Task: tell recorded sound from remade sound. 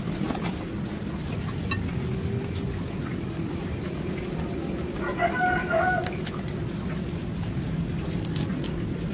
recorded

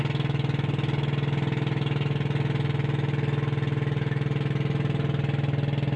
recorded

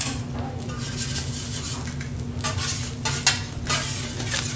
recorded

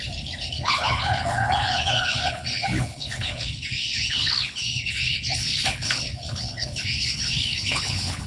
remade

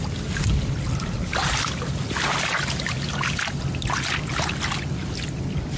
recorded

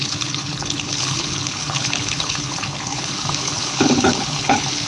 remade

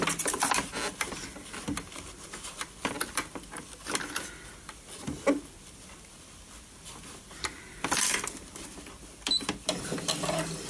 recorded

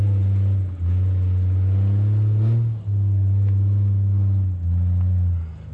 recorded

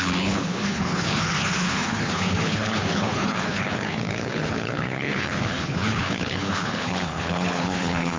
remade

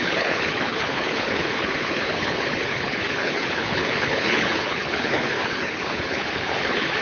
remade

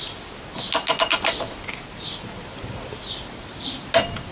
recorded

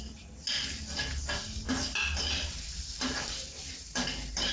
recorded